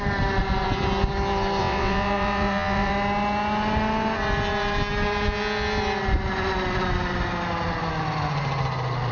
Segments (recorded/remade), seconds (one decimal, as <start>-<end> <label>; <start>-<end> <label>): 0.0-1.6 recorded; 1.6-2.9 remade; 2.9-9.1 recorded